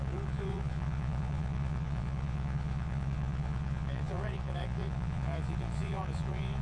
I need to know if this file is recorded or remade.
remade